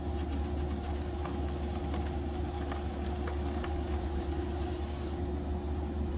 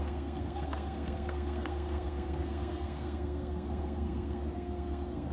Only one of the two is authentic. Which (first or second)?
first